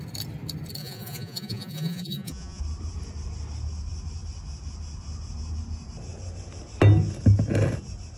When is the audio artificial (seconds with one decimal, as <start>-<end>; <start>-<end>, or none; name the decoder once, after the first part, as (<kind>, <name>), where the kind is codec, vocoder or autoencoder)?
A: 0.8-2.6 (vocoder, Vocos)